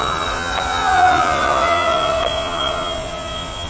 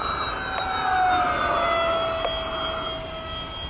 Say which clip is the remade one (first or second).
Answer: first